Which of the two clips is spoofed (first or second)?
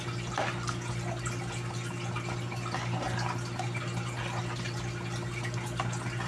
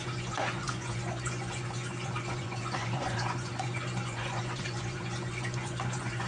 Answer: second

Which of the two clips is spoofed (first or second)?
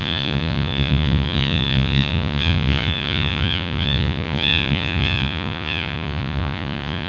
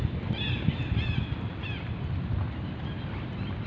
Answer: first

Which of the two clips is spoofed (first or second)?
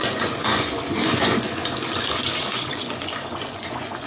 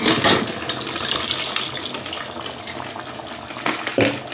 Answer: first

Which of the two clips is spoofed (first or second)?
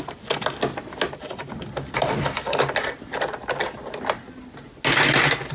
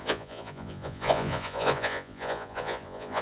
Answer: second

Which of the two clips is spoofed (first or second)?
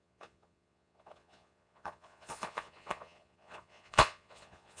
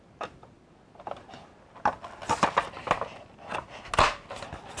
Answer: first